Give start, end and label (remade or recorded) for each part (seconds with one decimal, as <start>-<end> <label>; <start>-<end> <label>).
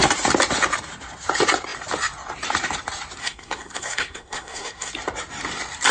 0.0-3.2 recorded; 3.2-4.9 remade; 4.9-5.9 recorded